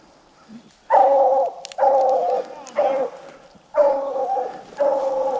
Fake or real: real